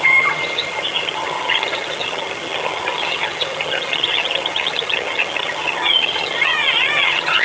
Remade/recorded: remade